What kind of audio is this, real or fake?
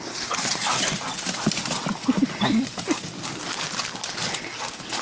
real